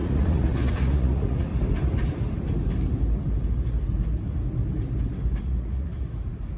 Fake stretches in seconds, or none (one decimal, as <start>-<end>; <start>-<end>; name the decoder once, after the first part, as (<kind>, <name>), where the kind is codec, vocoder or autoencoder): 0.0-1.5 (vocoder, Vocos); 5.4-5.9